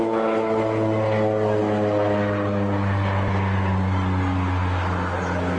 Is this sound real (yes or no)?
yes